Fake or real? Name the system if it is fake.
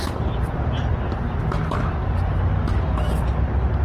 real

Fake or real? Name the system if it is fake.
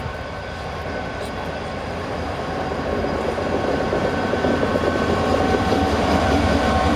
fake, vocoder, BigVGAN v2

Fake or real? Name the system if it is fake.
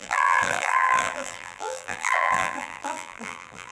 fake, vocoder, BigVGAN v2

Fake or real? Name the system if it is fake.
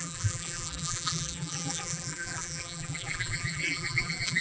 fake, vocoder, BigVGAN v2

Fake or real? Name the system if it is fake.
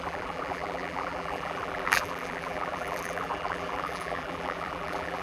fake, vocoder, BigVGAN v2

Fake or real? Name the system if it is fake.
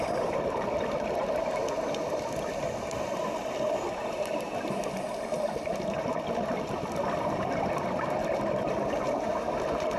real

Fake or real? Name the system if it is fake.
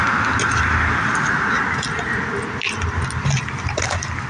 real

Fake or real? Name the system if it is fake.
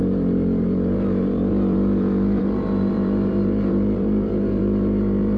fake, vocoder, BigVGAN v2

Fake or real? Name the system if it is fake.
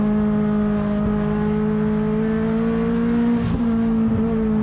real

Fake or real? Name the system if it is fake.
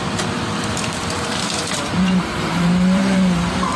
fake, vocoder, BigVGAN v2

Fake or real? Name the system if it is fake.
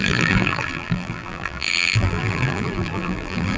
fake, vocoder, BigVGAN v2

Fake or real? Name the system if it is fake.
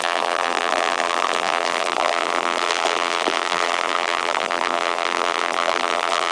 fake, vocoder, BigVGAN v2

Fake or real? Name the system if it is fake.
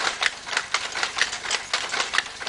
real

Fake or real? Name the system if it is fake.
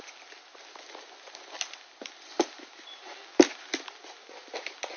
real